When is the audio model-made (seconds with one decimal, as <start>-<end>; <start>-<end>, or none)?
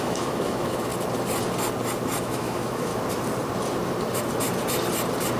0.0-0.9; 2.2-2.9